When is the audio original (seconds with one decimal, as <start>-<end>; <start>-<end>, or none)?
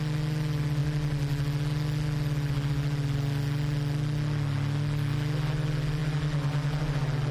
0.0-7.3